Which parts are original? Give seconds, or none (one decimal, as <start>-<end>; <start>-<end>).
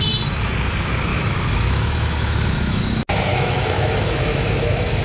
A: 0.0-1.1; 2.8-3.3